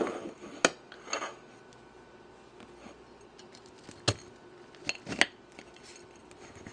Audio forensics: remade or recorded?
recorded